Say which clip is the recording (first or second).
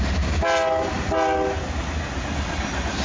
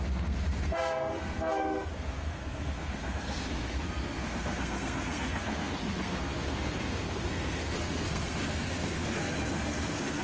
first